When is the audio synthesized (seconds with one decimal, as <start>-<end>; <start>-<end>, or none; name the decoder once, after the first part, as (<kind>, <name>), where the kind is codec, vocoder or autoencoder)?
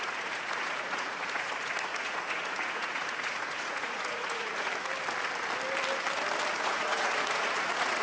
0.0-4.7 (vocoder, Vocos); 6.5-8.0